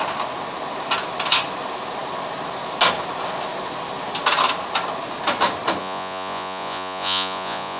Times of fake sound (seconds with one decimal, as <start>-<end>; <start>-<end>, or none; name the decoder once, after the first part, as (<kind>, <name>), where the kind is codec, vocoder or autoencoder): 5.8-7.8 (vocoder, Vocos)